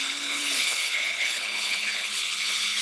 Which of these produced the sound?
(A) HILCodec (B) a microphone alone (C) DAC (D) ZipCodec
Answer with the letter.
A